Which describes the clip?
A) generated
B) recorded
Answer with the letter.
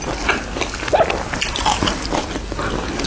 B